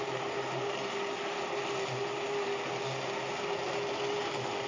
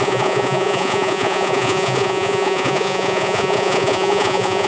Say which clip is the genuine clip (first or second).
first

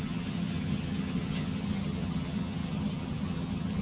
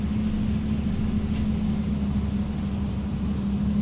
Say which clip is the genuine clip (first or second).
second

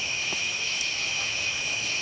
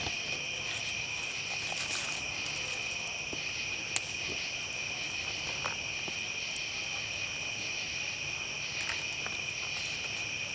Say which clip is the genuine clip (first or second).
second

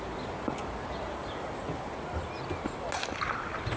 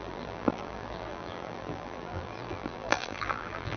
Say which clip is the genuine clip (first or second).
first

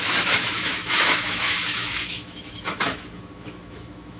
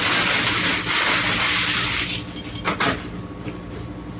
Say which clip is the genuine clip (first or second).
second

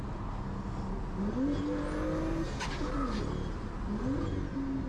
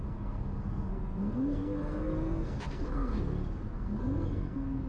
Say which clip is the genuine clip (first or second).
first